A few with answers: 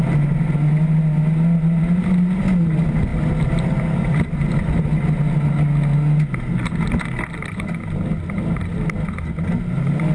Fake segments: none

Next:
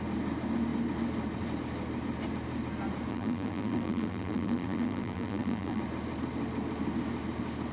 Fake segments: 3.1-5.8 (vocoder, BigVGAN v2)

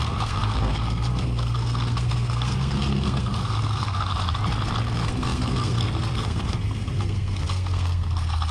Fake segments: 0.0-4.1 (codec, SNAC); 4.8-8.5

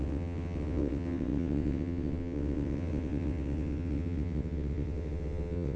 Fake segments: 0.0-5.8 (vocoder, WaveNeXt)

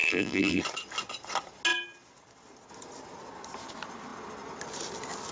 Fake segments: 0.0-0.6 (vocoder, BigVGAN v2)